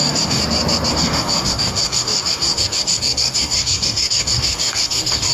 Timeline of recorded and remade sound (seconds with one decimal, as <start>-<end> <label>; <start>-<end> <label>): 0.0-0.4 remade; 0.4-0.9 recorded; 0.9-5.3 remade